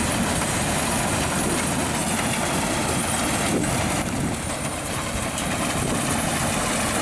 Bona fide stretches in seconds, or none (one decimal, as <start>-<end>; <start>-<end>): 0.0-2.0; 4.3-7.0